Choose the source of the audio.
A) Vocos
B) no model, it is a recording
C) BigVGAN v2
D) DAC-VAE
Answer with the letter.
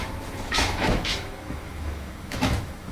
D